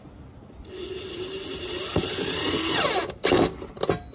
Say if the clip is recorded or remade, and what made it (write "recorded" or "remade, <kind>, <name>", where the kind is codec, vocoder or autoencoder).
recorded